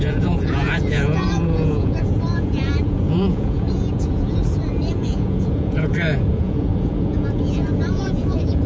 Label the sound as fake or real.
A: fake